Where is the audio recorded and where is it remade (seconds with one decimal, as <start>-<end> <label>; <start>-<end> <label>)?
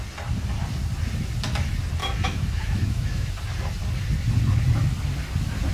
0.0-2.0 recorded; 2.0-3.3 remade; 3.3-5.7 recorded